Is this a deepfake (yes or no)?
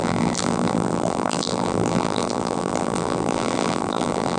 yes